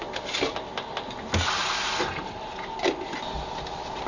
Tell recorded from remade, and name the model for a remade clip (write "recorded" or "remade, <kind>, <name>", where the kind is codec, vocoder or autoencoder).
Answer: recorded